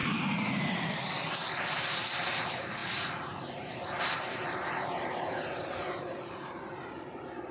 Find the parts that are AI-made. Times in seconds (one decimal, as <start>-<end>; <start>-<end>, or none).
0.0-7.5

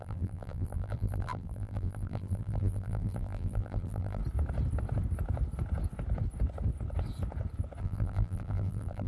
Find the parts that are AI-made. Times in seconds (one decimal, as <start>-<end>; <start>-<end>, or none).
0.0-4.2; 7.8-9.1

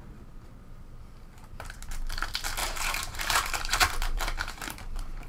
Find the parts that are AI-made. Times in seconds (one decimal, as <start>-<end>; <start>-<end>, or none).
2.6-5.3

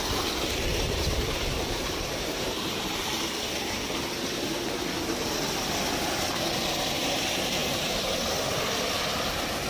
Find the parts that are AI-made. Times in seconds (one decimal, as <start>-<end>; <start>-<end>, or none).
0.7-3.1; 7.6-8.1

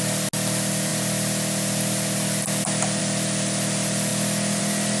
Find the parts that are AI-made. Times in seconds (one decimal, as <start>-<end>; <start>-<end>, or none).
none

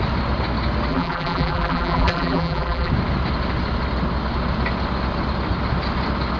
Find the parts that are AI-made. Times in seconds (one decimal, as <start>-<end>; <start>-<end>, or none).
0.9-2.9

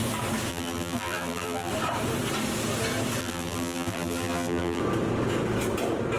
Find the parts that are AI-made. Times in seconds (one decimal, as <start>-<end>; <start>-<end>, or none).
0.5-1.7; 3.2-4.8